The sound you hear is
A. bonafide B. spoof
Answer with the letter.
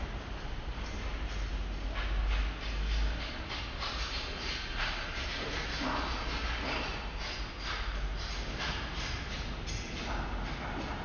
A